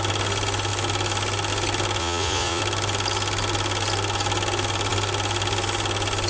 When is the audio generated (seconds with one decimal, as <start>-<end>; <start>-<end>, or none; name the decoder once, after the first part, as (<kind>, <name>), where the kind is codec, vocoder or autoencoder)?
2.0-2.6 (vocoder, Vocos)